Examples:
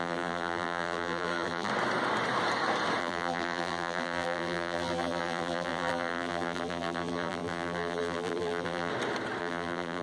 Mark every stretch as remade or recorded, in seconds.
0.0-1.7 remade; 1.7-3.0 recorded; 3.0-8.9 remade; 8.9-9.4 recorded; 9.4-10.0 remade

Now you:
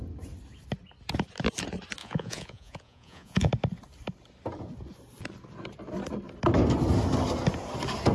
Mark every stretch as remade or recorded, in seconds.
0.0-2.0 recorded; 2.0-3.5 remade; 3.5-8.1 recorded

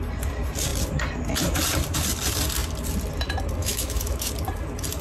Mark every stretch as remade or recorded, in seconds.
0.0-3.6 recorded; 3.6-4.3 remade; 4.3-5.0 recorded

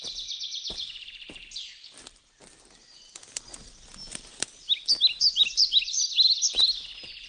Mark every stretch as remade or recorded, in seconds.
0.0-4.0 recorded; 4.0-4.9 remade; 4.9-5.4 recorded; 5.4-6.0 remade; 6.0-7.3 recorded

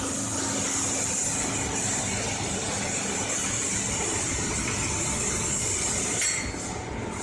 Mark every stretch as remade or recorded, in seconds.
0.0-7.2 recorded